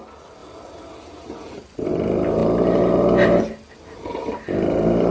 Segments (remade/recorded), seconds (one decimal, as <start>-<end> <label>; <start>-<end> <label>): 0.0-5.1 recorded